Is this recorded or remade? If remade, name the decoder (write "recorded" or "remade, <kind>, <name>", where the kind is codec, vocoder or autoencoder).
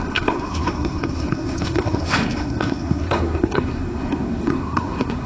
remade, codec, SNAC